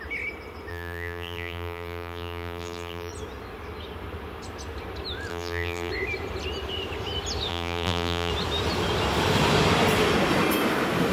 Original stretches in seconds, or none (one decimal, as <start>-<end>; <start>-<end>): 0.0-0.7; 3.1-5.3; 5.9-7.5; 8.3-11.1